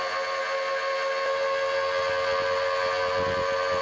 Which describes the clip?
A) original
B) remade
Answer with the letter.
A